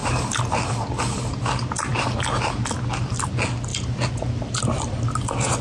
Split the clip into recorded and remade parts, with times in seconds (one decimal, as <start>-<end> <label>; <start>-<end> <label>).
0.0-5.6 recorded